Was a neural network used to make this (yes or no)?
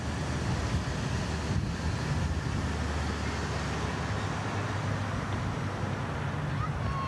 no